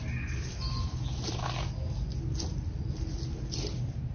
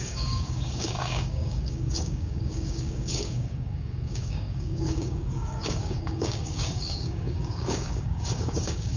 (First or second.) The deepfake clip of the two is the second